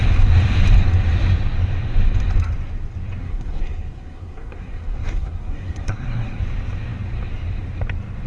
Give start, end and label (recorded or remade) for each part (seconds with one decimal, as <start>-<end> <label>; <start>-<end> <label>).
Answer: 0.0-3.2 recorded; 3.2-6.4 remade; 6.4-8.3 recorded